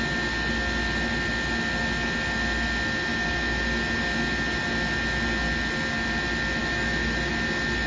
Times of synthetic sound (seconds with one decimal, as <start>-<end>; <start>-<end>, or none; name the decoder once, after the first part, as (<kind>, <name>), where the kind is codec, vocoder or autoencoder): 6.6-7.3 (autoencoder, DAC-VAE)